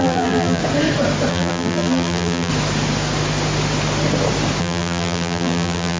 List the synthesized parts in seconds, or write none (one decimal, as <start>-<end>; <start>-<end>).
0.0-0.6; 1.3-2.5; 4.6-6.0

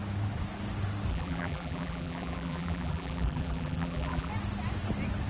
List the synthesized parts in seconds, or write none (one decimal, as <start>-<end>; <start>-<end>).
1.1-4.3

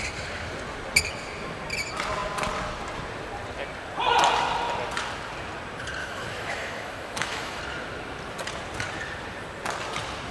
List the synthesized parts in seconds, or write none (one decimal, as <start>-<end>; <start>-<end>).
6.0-7.6

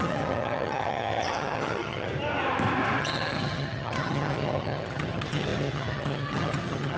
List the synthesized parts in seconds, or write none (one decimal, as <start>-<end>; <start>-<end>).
0.0-2.1; 3.0-7.0